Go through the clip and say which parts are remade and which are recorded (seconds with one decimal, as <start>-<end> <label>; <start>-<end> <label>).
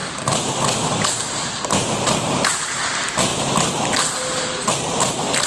0.0-5.5 recorded